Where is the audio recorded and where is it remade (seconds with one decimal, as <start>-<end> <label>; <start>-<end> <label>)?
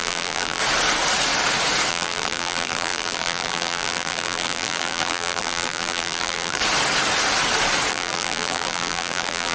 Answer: 0.0-0.6 remade; 0.6-1.9 recorded; 1.9-6.6 remade; 6.6-7.9 recorded; 7.9-9.5 remade